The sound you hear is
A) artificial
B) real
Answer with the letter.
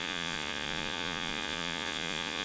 A